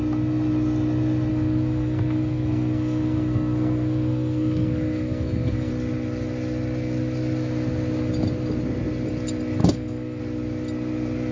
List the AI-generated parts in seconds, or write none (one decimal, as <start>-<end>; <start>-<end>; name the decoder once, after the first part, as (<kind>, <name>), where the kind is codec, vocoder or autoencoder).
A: 1.3-5.7 (codec, SNAC); 9.6-10.2